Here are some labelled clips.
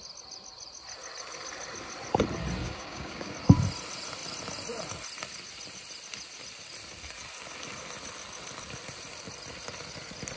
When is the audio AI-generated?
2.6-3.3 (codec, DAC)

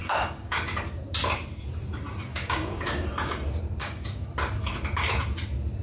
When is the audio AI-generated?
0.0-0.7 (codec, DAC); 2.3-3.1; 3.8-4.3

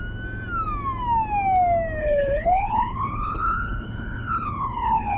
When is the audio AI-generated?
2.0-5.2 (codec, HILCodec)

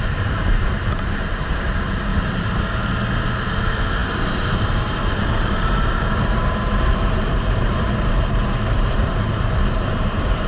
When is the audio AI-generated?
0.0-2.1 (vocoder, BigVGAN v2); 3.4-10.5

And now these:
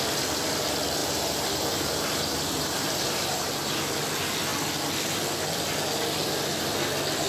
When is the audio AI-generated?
1.0-3.5 (vocoder, BigVGAN v2)

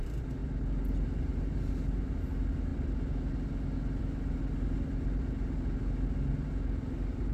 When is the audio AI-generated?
none